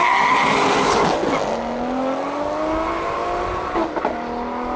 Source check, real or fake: real